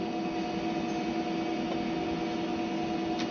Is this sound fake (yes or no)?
no